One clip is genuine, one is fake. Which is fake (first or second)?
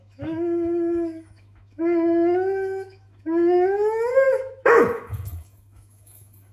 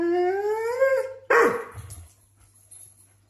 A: first